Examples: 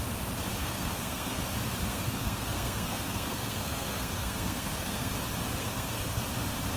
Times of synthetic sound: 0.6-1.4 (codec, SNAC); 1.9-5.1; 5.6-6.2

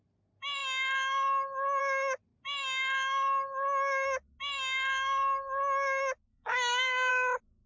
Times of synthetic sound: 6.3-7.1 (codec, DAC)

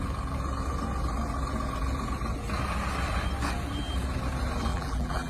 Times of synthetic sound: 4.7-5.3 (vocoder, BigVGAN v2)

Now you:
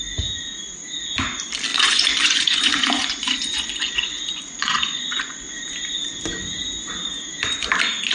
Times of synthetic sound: 1.7-5.7 (vocoder, Vocos)